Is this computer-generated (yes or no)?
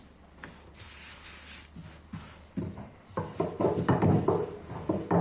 no